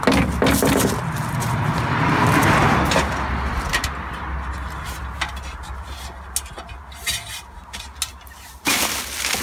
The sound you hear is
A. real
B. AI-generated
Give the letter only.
A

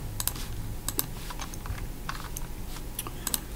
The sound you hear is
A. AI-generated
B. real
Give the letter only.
B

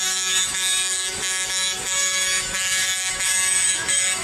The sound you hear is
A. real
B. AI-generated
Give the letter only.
B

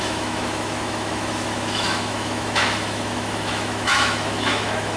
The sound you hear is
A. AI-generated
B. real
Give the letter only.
A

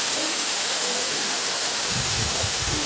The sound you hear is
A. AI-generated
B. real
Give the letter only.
A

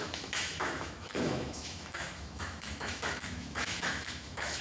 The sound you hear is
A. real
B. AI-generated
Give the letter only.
B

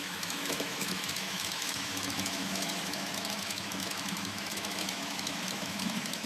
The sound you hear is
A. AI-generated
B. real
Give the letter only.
A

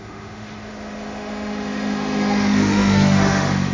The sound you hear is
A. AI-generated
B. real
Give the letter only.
A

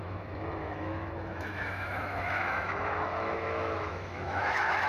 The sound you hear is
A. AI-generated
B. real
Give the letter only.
A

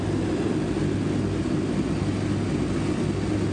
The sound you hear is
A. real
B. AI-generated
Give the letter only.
A